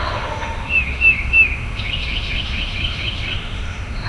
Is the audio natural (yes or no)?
no